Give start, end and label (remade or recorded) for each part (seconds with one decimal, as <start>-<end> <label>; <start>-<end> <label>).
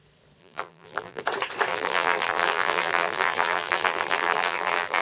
0.0-0.4 recorded; 0.4-1.2 remade; 1.2-1.7 recorded; 1.7-5.0 remade